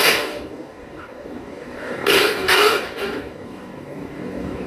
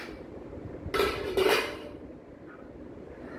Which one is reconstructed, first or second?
first